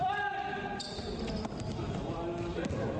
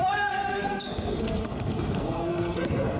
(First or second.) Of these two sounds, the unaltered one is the first